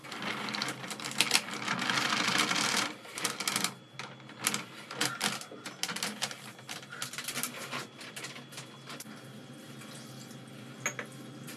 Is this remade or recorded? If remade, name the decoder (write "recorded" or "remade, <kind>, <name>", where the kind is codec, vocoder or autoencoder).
recorded